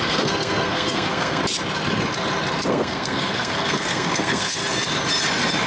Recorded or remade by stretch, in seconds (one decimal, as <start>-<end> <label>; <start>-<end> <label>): 0.0-1.4 remade; 1.4-2.7 recorded; 2.7-4.6 remade; 4.6-5.7 recorded